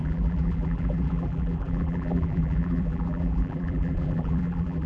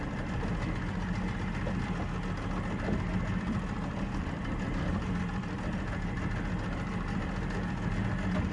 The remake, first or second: first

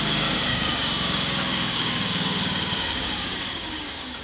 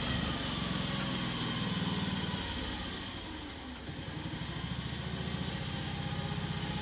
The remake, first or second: first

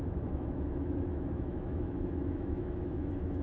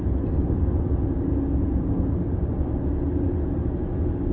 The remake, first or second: first